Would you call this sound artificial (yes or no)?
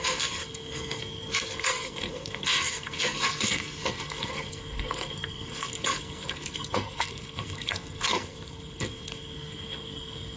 yes